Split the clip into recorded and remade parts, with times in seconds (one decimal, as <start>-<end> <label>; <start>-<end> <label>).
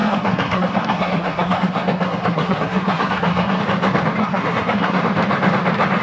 0.0-3.6 remade; 3.6-4.2 recorded; 4.2-5.0 remade; 5.0-6.0 recorded